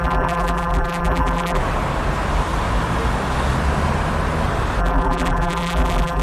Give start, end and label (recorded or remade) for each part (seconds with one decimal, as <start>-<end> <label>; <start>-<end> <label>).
0.0-1.6 remade; 1.6-4.8 recorded; 4.8-6.2 remade